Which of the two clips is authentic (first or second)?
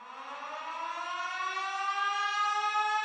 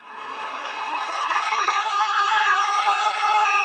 first